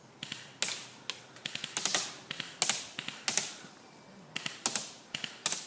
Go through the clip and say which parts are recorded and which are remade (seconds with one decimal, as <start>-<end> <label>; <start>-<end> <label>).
0.0-5.7 recorded